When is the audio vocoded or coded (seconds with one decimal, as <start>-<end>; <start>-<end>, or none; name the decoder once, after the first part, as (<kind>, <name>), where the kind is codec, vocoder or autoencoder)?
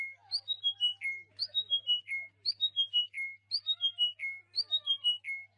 none